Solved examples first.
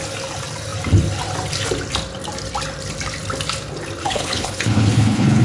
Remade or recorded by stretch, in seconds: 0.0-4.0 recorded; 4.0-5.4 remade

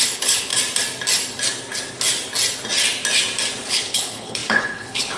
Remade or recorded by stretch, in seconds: 0.0-0.5 remade; 0.5-3.6 recorded; 3.6-5.2 remade